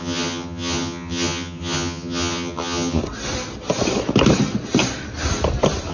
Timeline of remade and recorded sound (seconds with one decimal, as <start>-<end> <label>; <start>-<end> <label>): 0.0-3.0 remade; 3.0-5.9 recorded